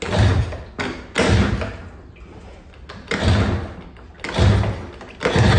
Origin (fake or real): real